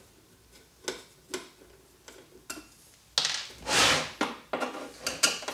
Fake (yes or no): no